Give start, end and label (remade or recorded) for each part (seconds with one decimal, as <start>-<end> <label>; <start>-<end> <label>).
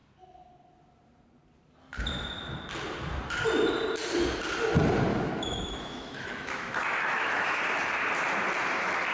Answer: 0.0-5.1 recorded; 5.1-7.6 remade; 7.6-9.1 recorded